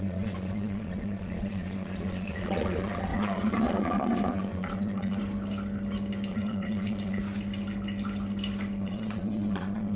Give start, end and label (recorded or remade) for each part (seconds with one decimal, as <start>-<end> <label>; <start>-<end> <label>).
0.0-5.2 remade; 5.2-6.3 recorded; 6.3-7.2 remade; 7.2-8.8 recorded; 8.8-10.0 remade